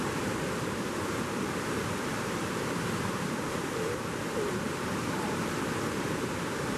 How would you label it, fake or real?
fake